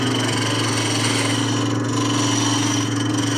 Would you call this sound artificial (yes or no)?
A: no